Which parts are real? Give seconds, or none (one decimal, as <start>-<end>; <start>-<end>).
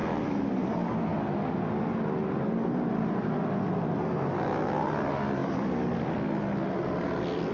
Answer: 0.7-5.4; 6.1-7.5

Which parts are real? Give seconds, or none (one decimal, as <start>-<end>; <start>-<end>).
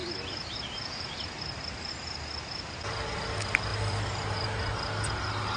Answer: 1.9-3.7; 4.7-5.6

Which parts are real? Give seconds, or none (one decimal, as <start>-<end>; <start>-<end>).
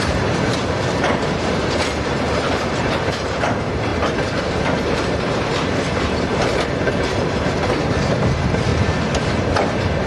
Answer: 3.9-4.5; 8.7-9.6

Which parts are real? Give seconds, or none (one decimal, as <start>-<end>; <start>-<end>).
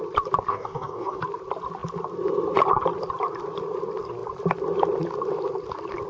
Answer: 0.0-0.5; 1.2-6.1